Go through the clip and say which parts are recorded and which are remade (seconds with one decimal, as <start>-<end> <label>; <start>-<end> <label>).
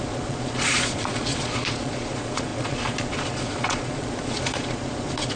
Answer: 0.0-5.4 remade